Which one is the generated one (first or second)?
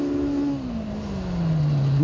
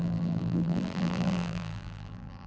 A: second